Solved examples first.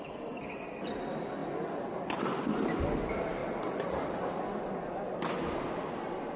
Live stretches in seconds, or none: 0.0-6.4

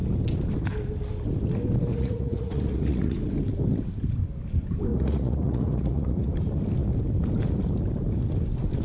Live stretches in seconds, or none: 0.0-1.9; 3.2-4.9; 6.3-8.8

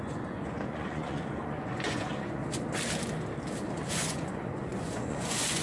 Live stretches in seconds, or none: 2.4-3.9

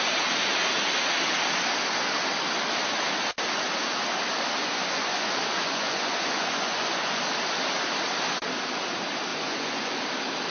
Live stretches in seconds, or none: 0.0-4.6; 7.2-9.3; 10.0-10.5

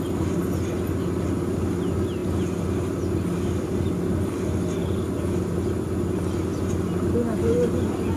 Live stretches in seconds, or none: 0.0-8.2